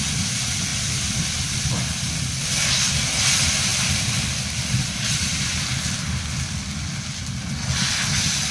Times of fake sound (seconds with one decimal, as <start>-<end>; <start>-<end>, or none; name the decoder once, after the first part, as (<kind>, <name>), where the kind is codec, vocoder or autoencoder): 0.7-2.1 (vocoder, BigVGAN v2); 3.7-7.0